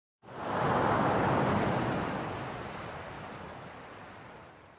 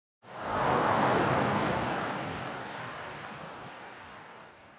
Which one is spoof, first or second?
second